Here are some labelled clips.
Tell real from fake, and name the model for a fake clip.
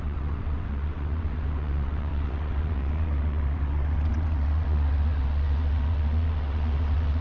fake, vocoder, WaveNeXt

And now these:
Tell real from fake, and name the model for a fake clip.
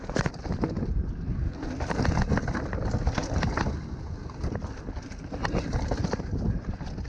real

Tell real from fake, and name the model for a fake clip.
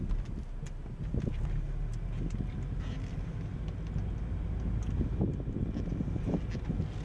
real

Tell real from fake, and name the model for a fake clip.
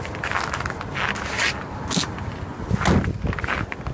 real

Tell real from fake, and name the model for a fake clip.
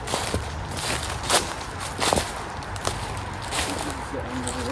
real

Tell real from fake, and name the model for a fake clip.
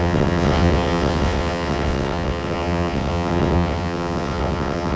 fake, vocoder, WaveNeXt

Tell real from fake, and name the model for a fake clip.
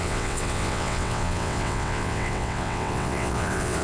fake, vocoder, WaveNeXt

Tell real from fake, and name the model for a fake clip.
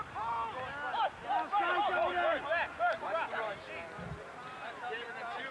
real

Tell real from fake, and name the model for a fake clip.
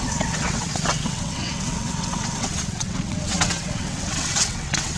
fake, vocoder, WaveNeXt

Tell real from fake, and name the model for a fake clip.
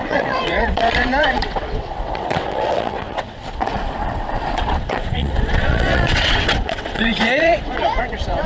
fake, vocoder, WaveNeXt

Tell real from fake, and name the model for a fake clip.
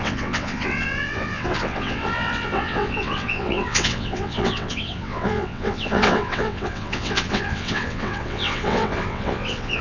fake, vocoder, WaveNeXt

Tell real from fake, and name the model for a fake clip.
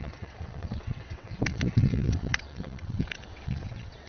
fake, vocoder, WaveNeXt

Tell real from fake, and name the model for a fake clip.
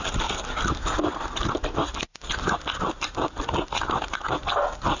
real